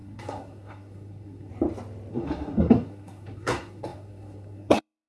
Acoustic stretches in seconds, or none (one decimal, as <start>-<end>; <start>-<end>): 1.5-2.1

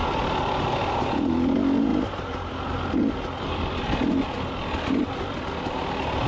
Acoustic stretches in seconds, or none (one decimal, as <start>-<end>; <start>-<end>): 0.0-6.3

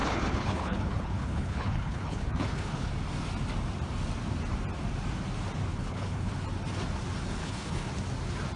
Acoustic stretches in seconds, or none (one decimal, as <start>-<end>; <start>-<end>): 2.9-5.7; 6.3-7.4; 7.9-8.6

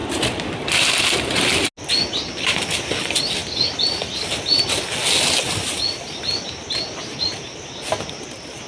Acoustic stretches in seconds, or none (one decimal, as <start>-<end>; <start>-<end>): 0.0-8.7